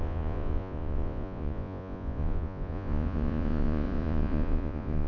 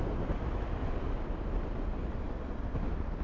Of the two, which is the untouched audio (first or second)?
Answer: second